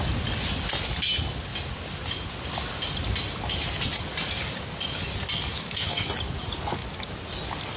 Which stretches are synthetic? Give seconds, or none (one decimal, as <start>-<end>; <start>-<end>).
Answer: 5.5-6.1

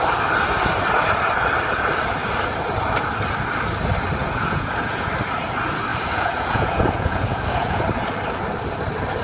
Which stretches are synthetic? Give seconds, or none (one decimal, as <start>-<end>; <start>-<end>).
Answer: 4.2-5.1; 5.9-7.8

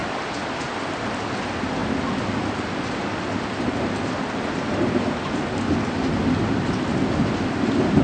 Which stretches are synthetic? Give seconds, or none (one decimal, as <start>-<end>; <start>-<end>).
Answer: none

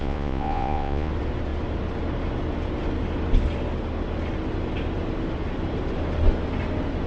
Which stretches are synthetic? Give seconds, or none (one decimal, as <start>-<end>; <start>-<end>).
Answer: 0.0-1.1

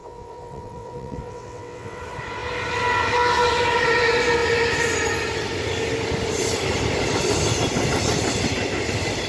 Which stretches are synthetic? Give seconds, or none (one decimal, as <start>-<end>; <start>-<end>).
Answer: 0.0-2.0

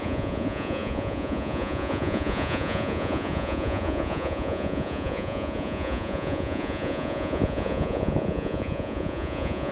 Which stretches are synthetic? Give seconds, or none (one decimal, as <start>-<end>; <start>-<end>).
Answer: 0.0-9.7

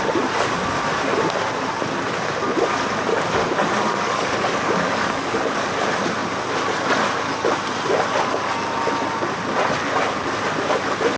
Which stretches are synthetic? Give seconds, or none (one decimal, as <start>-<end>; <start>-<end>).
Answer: 3.1-5.7